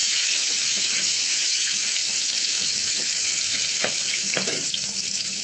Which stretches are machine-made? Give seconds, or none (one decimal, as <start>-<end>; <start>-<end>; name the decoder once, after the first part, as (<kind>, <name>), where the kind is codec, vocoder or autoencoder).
0.0-5.4 (autoencoder, DAC-VAE)